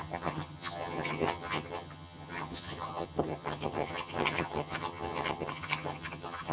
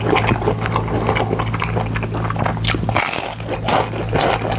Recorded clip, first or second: second